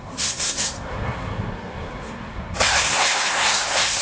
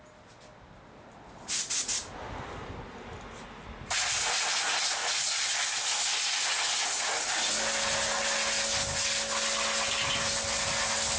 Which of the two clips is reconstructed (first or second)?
first